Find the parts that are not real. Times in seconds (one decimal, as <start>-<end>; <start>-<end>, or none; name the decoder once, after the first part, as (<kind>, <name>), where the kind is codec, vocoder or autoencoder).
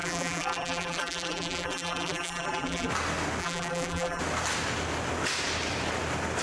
0.0-2.9 (vocoder, BigVGAN v2); 3.4-4.2